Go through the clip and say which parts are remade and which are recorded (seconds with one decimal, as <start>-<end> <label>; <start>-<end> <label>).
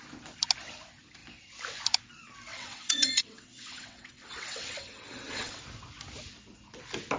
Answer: 0.0-2.5 recorded; 2.5-5.6 remade; 5.6-7.2 recorded